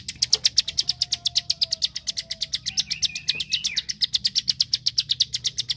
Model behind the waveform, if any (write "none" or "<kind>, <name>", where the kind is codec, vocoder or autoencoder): none